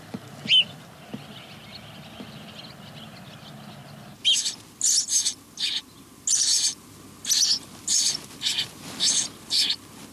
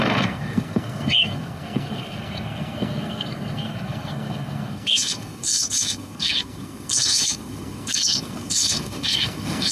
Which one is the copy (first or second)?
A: second